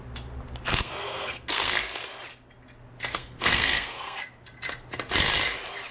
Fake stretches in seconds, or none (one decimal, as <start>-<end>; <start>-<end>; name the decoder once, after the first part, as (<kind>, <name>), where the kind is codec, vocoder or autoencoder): 0.7-1.8 (codec, SNAC); 3.1-4.2